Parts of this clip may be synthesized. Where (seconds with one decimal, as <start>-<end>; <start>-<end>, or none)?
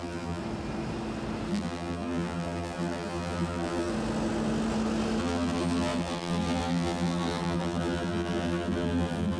0.0-0.4; 1.5-3.9; 5.2-9.4